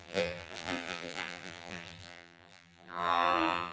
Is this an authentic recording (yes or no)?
no